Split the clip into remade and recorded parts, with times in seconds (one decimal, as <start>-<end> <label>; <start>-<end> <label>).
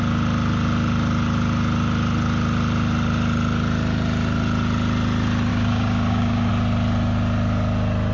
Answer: 0.0-5.5 recorded; 5.5-6.5 remade; 6.5-8.1 recorded